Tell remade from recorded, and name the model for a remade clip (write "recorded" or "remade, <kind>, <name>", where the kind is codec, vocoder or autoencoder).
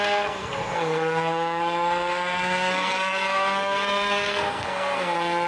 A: remade, codec, SNAC